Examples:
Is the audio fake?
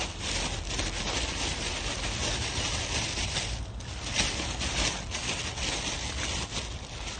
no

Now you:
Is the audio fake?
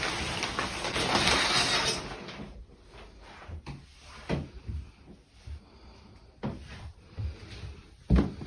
no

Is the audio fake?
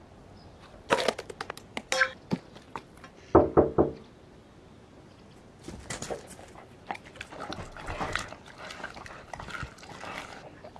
no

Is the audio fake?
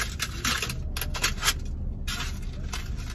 no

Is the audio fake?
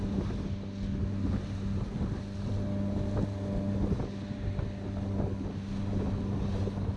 no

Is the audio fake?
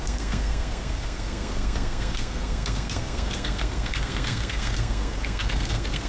yes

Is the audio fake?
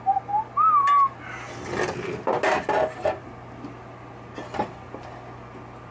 no